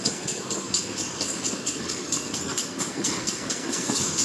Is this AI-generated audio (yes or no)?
yes